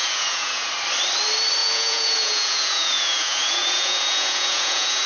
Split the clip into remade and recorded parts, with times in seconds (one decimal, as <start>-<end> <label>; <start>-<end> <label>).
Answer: 0.0-0.7 remade; 0.7-1.6 recorded; 1.6-5.1 remade

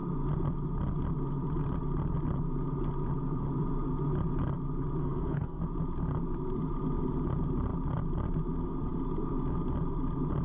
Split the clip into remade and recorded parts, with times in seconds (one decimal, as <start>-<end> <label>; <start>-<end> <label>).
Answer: 0.0-5.0 recorded; 5.0-5.6 remade; 5.6-10.4 recorded